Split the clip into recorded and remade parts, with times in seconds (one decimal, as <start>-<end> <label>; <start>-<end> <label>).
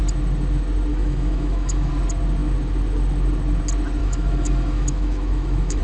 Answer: 0.0-0.9 recorded; 0.9-1.9 remade; 1.9-4.0 recorded; 4.0-5.8 remade